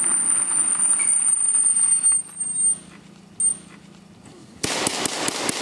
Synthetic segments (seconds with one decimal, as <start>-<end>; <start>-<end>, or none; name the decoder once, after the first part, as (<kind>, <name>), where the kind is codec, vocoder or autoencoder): none